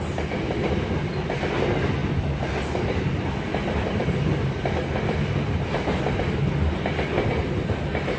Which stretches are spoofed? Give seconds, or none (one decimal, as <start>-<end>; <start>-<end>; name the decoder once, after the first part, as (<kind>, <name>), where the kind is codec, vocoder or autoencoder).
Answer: none